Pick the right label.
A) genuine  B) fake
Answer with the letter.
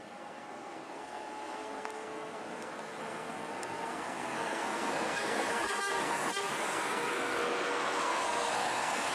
B